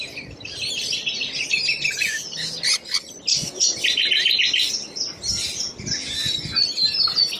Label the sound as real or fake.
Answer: real